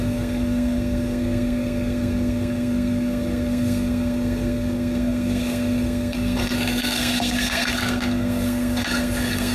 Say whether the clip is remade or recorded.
remade